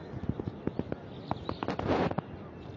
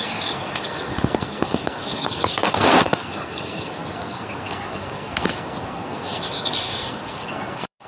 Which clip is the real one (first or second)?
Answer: first